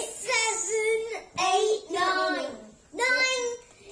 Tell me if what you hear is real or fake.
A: real